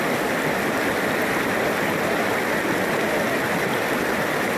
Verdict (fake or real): real